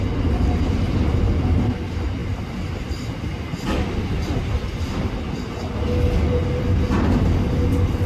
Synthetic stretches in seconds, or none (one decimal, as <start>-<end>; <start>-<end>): none